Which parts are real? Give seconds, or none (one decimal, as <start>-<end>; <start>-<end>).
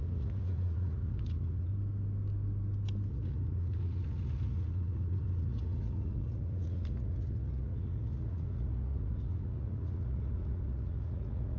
1.7-3.1